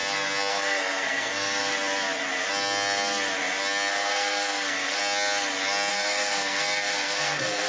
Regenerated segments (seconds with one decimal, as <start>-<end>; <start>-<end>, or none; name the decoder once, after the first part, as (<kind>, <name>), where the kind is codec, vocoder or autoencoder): 0.5-1.6 (codec, SNAC); 3.9-5.0; 5.9-7.7